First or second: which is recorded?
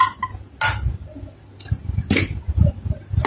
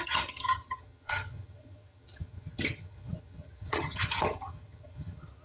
first